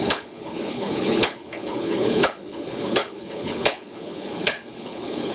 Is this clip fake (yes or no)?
yes